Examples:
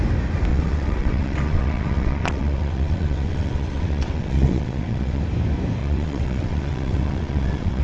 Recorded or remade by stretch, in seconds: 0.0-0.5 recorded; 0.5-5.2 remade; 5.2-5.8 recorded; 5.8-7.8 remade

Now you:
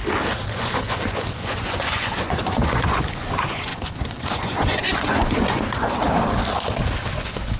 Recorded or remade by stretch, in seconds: 0.0-0.5 recorded; 0.5-5.8 remade; 5.8-7.1 recorded; 7.1-7.6 remade

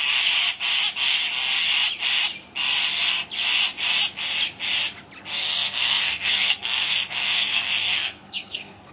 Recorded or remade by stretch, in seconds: 0.0-5.4 recorded; 5.4-8.9 remade

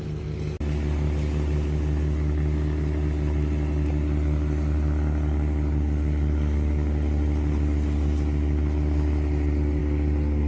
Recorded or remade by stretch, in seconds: 0.0-10.5 recorded

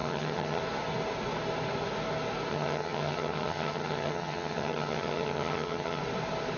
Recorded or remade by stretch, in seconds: 0.0-0.6 remade; 0.6-2.5 recorded; 2.5-6.0 remade; 6.0-6.6 recorded

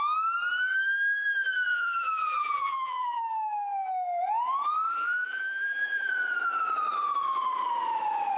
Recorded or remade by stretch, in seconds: 0.0-1.7 recorded; 1.7-3.2 remade; 3.2-4.9 recorded; 4.9-6.1 remade; 6.1-8.4 recorded